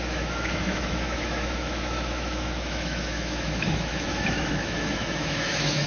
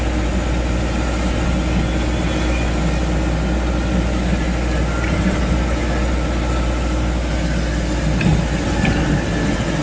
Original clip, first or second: second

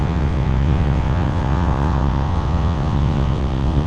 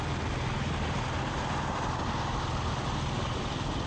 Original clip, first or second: second